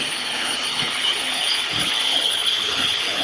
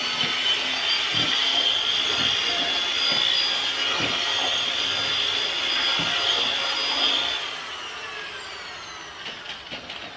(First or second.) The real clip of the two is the second